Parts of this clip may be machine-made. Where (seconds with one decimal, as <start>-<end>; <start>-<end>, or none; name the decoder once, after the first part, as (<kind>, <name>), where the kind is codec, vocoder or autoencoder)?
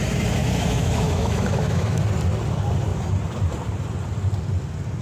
0.4-2.0 (autoencoder, DAC-VAE)